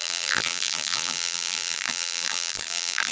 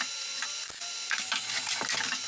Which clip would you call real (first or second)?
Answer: second